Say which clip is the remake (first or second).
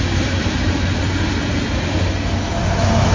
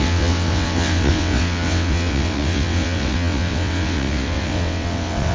second